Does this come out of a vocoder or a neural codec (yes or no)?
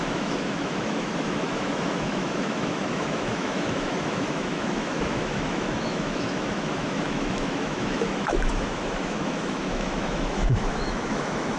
yes